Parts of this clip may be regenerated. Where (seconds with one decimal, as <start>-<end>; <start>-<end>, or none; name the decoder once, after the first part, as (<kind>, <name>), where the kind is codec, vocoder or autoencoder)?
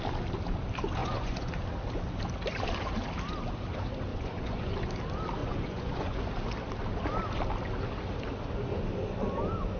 1.0-1.5 (vocoder, Vocos); 4.1-4.7; 5.4-6.2